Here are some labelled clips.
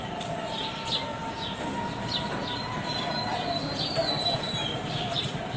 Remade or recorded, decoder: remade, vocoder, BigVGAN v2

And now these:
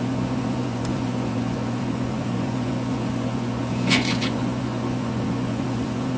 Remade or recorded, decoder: remade, vocoder, Vocos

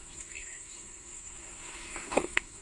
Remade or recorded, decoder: remade, codec, SNAC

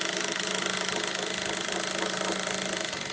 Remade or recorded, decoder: recorded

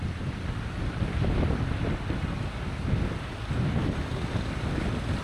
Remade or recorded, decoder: recorded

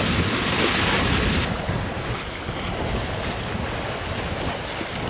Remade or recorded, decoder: recorded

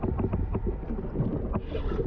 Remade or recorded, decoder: recorded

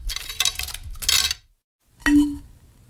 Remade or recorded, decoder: recorded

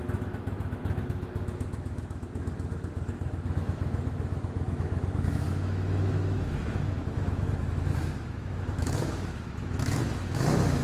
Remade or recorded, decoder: remade, autoencoder, DAC-VAE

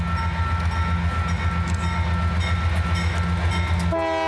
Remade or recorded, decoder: recorded